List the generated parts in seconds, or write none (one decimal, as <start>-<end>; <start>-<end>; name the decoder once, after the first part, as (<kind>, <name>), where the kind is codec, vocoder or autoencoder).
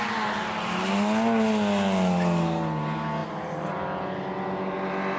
none